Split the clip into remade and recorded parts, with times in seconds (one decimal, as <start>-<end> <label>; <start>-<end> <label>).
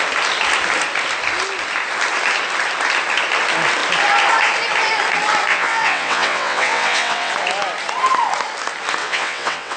0.0-5.5 recorded; 5.5-7.3 remade; 7.3-9.0 recorded; 9.0-9.8 remade